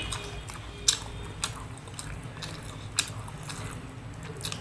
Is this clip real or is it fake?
real